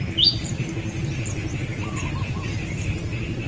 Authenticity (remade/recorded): recorded